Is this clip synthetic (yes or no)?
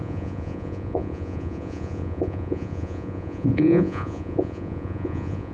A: yes